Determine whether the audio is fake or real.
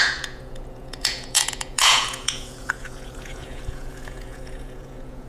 fake